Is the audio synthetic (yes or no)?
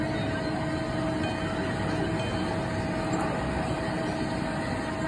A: no